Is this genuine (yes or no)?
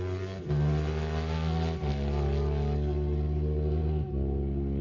yes